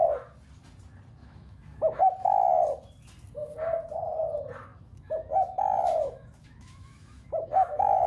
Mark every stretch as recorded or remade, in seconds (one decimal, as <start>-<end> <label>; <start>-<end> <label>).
0.0-1.2 recorded; 1.2-2.0 remade; 2.0-4.7 recorded; 4.7-8.1 remade